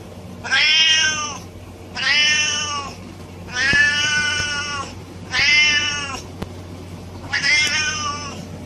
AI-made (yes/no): yes